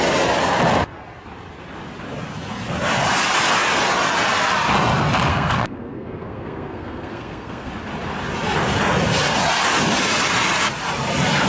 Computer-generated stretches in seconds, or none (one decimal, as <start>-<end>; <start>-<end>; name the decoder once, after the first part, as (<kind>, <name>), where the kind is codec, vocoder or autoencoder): 5.3-7.7 (codec, SNAC)